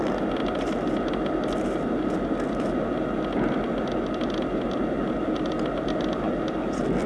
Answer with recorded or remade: recorded